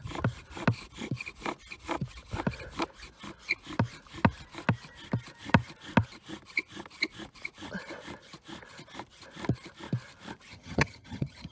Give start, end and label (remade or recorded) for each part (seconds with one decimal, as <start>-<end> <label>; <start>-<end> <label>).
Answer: 0.0-10.5 recorded; 10.5-11.5 remade